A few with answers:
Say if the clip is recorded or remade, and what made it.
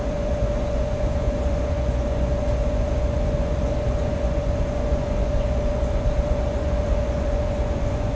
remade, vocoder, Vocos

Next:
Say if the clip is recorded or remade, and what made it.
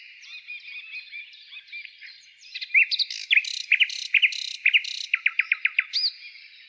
recorded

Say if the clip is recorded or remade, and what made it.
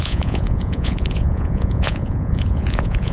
remade, vocoder, Vocos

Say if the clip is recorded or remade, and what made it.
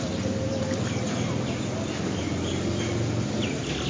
recorded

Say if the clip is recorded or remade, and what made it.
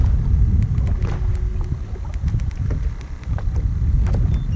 recorded